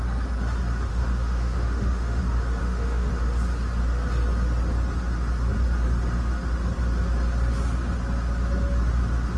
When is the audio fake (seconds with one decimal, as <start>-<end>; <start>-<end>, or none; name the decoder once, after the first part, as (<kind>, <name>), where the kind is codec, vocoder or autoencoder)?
0.9-2.2 (autoencoder, DAC-VAE); 2.6-3.1